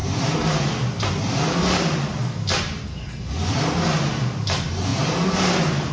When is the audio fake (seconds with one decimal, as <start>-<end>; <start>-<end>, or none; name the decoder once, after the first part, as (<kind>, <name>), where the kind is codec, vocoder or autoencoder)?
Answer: none